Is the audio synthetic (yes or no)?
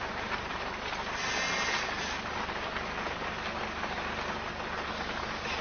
no